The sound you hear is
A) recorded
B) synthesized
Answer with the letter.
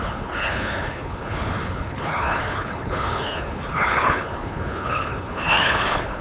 B